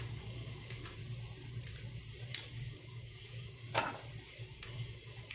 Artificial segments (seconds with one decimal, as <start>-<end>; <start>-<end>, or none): 0.0-1.0; 2.3-3.7; 4.3-5.3